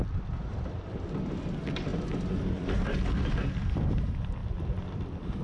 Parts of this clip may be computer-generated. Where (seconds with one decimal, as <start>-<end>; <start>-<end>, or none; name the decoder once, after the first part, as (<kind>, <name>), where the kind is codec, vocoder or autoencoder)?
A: 1.2-5.4 (vocoder, BigVGAN v2)